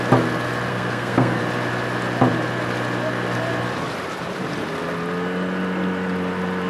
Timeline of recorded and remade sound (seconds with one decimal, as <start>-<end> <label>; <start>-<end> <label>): 0.0-0.7 recorded; 0.7-1.4 remade; 1.4-6.7 recorded